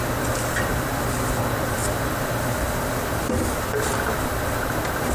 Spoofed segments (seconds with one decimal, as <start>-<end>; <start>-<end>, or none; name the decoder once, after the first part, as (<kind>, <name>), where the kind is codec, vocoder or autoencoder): none